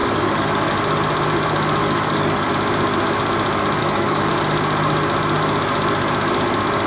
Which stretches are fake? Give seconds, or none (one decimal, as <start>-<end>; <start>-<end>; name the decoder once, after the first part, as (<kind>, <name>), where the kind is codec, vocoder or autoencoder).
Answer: 0.0-0.7 (codec, DAC); 1.8-2.5; 3.8-4.3